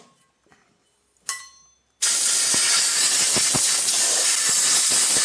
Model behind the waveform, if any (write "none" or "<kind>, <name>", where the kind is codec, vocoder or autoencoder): none